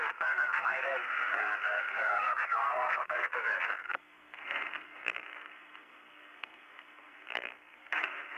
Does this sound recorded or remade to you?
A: remade